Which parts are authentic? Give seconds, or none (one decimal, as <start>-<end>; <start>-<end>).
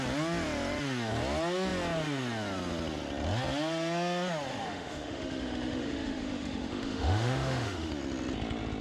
0.0-4.5; 7.9-8.8